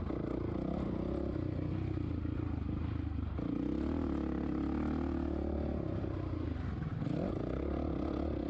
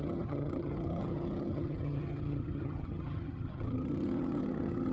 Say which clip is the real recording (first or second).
first